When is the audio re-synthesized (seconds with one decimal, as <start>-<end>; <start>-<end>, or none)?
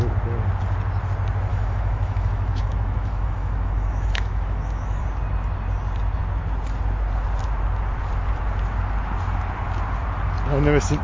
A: 1.5-5.0